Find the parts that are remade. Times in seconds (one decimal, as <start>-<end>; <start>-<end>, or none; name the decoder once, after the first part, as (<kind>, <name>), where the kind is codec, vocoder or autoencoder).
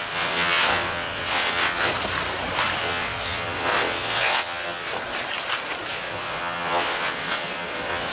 0.0-1.9 (vocoder, WaveNeXt); 2.8-4.9; 5.9-8.1